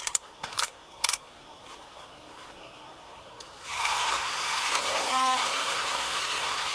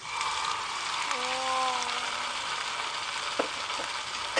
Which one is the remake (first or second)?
first